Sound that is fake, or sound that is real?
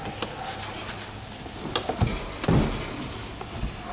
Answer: real